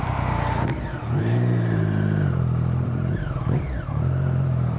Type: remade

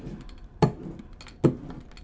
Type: recorded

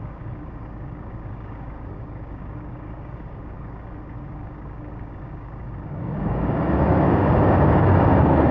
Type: remade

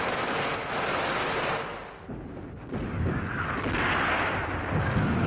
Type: recorded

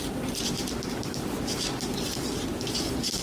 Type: recorded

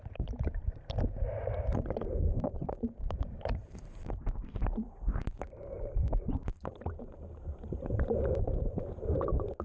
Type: remade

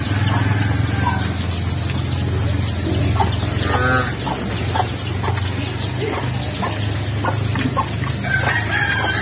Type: recorded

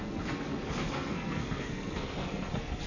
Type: remade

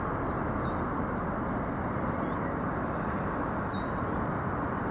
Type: recorded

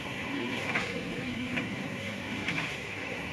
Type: remade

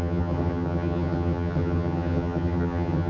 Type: remade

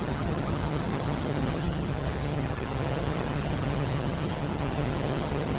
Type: remade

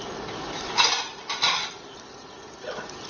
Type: recorded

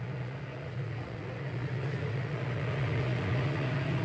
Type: remade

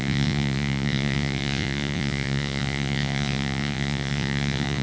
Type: remade